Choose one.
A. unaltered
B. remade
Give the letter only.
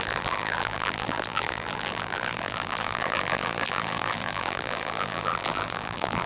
B